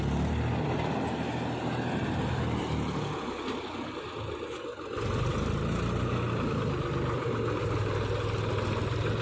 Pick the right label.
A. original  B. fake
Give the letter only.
A